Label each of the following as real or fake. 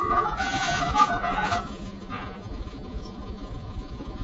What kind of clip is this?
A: fake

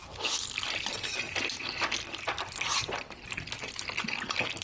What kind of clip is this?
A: real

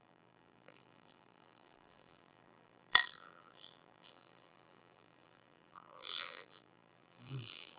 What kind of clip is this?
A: fake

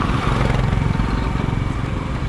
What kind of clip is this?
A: fake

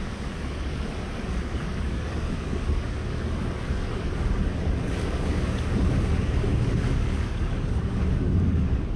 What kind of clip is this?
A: fake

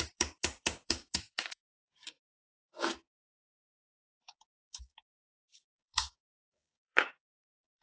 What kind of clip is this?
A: fake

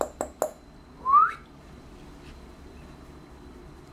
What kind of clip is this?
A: real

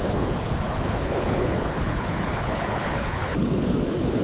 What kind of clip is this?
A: fake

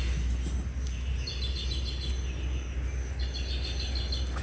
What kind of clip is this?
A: real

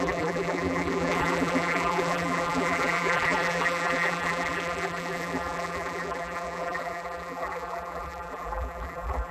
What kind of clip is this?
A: fake